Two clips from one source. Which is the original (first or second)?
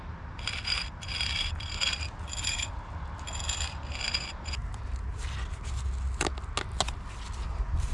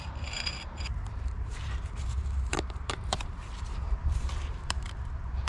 first